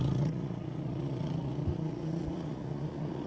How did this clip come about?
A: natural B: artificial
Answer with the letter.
B